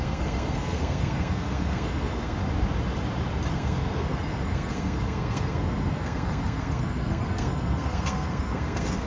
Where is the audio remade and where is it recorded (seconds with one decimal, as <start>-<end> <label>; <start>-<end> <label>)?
0.0-2.4 remade; 2.4-3.5 recorded; 3.5-9.1 remade